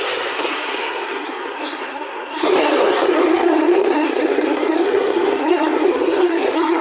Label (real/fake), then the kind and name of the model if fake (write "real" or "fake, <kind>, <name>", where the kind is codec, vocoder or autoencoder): fake, codec, SNAC